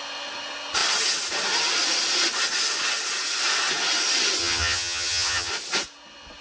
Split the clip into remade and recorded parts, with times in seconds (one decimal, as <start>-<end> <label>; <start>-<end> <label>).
0.0-4.4 recorded; 4.4-5.5 remade; 5.5-6.4 recorded